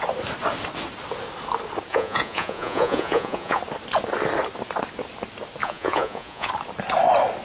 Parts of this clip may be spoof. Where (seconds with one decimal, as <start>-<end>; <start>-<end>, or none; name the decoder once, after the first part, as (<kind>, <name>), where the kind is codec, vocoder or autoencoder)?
1.9-3.6 (vocoder, Vocos); 5.6-6.5